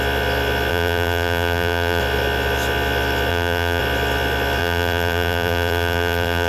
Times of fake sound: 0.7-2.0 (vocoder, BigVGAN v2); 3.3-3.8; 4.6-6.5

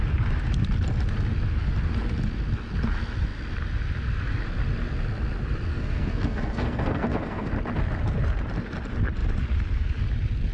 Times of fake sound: 5.7-7.5 (codec, SNAC)

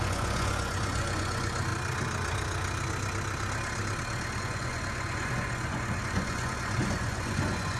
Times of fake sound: 0.0-1.7 (vocoder, Vocos); 4.4-7.8